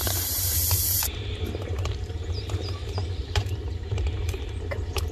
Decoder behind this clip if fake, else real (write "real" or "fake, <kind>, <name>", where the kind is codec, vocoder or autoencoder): fake, vocoder, BigVGAN v2